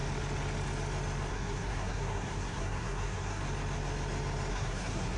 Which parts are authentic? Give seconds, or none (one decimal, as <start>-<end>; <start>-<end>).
0.0-1.3; 3.4-4.5